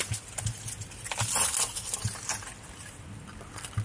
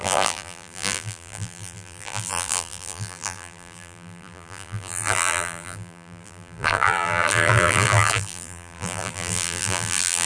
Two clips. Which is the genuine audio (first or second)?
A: first